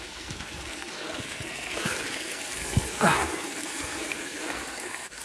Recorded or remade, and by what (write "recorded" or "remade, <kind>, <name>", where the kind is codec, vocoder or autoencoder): remade, codec, SNAC